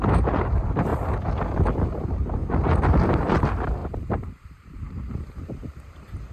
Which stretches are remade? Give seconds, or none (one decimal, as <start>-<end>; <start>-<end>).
0.0-0.9; 1.8-2.4; 3.1-6.3